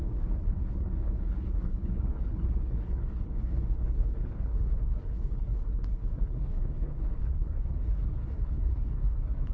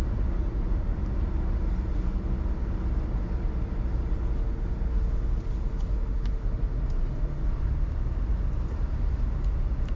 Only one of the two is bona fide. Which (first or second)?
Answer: second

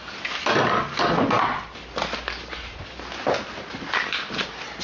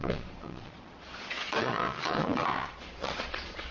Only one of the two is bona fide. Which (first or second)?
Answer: first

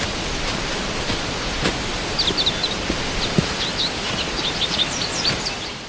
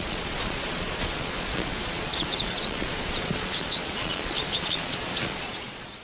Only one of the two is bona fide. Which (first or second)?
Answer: first